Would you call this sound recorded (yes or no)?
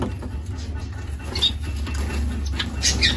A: yes